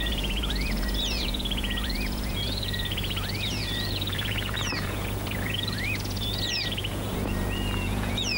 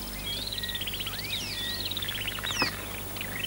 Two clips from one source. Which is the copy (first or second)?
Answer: first